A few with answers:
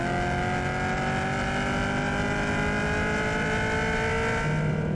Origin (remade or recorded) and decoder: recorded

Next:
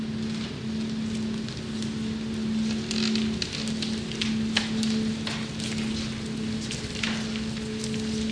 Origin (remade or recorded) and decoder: recorded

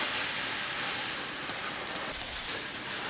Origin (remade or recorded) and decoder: recorded